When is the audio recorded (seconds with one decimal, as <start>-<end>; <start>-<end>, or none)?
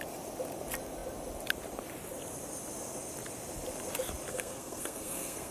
0.0-4.3